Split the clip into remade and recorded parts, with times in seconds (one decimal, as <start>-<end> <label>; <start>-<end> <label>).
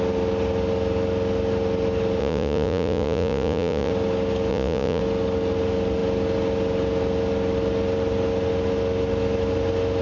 0.0-2.2 recorded; 2.2-3.9 remade; 3.9-4.5 recorded; 4.5-5.0 remade; 5.0-10.0 recorded